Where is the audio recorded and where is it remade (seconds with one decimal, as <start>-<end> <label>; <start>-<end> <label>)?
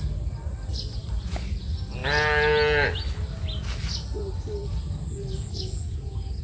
0.0-6.4 recorded